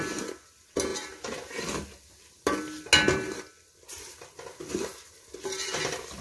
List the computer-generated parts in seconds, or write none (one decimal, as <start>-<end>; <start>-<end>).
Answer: none